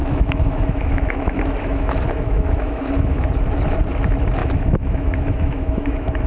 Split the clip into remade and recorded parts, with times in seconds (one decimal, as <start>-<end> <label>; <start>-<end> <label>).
0.0-3.3 remade; 3.3-4.4 recorded; 4.4-6.3 remade